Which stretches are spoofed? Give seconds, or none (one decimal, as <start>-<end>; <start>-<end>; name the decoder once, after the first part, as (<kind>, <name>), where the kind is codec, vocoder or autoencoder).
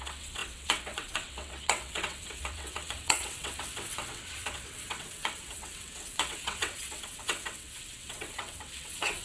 0.0-9.2 (vocoder, WaveNeXt)